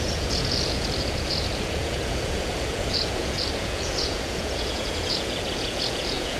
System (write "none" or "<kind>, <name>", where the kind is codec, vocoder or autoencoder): vocoder, Vocos